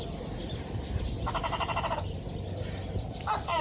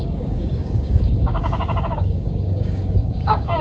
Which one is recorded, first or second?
first